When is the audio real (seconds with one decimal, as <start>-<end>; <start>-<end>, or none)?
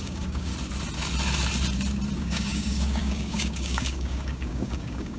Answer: 0.5-2.2